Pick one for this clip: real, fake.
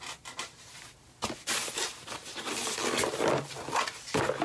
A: real